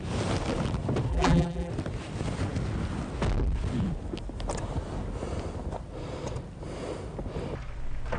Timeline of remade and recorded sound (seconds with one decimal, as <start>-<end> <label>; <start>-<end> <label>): 0.0-1.1 recorded; 1.1-1.7 remade; 1.7-8.2 recorded